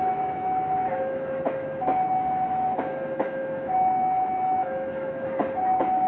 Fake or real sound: fake